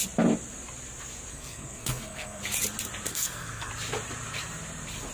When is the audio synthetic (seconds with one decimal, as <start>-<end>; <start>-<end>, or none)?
1.3-2.4; 3.1-3.7

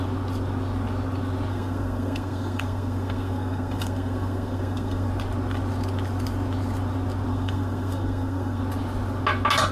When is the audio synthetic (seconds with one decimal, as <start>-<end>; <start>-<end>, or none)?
1.5-5.1; 7.3-8.6

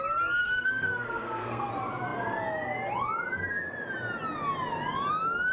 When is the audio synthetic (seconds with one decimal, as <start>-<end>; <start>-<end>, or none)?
0.4-1.7

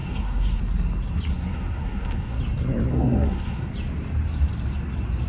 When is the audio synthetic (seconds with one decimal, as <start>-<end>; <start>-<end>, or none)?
0.0-0.6; 1.3-2.4; 2.9-3.7

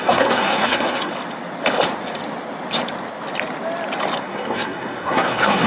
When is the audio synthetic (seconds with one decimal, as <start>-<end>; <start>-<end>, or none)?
0.0-1.1; 4.2-5.7

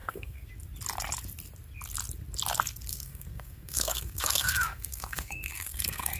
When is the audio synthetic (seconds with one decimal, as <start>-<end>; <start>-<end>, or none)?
0.0-0.5; 2.9-6.2

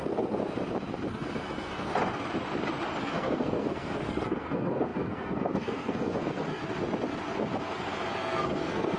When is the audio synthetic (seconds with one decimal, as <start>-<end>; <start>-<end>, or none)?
0.0-0.4; 1.1-1.9; 3.0-6.6; 8.1-9.0